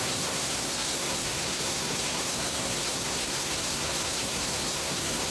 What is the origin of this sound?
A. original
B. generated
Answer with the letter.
B